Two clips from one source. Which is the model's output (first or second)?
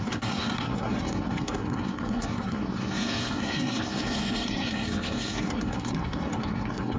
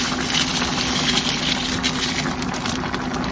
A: first